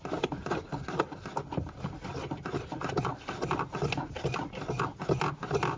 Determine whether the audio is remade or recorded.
recorded